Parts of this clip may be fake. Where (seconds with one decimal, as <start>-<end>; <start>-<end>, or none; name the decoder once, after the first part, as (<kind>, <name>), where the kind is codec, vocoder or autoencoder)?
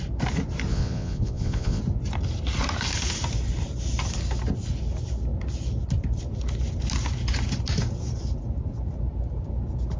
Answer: 0.7-1.8 (vocoder, Vocos)